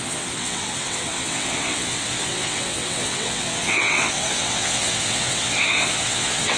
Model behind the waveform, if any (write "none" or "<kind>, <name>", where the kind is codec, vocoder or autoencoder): vocoder, WaveNeXt